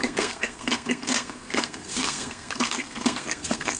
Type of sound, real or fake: fake